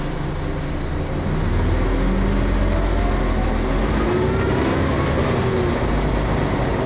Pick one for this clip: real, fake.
real